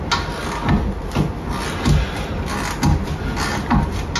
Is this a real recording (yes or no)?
yes